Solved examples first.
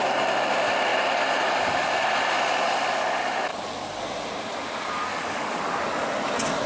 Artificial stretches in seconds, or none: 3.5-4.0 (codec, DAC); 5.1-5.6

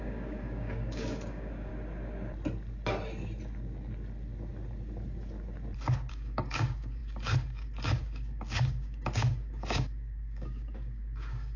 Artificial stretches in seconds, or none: 0.0-1.7 (codec, DAC); 6.1-11.6

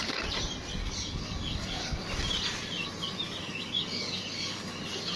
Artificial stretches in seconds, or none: 0.8-2.0 (codec, DAC); 3.4-4.8

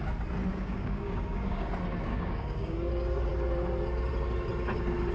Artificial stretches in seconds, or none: 0.5-1.7 (codec, DAC); 2.1-2.9